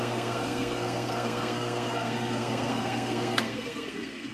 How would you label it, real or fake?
fake